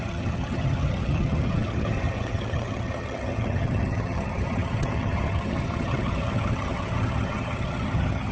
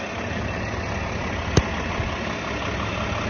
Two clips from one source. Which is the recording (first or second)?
second